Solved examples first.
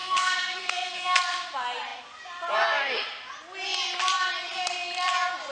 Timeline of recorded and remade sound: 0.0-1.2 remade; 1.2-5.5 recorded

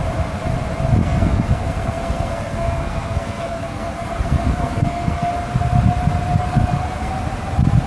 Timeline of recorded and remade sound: 0.0-1.0 recorded; 1.0-5.3 remade; 5.3-6.4 recorded; 6.4-7.1 remade; 7.1-7.9 recorded

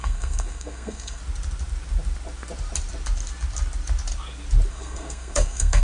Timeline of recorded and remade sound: 0.0-1.2 remade; 1.2-4.7 recorded; 4.7-5.8 remade

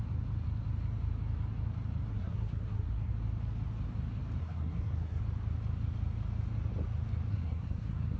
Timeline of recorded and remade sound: 0.0-2.1 recorded; 2.1-3.1 remade; 3.1-4.4 recorded; 4.4-5.2 remade; 5.2-7.3 recorded; 7.3-8.2 remade

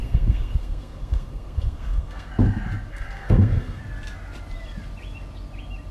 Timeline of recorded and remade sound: 0.0-2.3 remade; 2.3-2.9 recorded; 2.9-3.8 remade; 3.8-5.9 recorded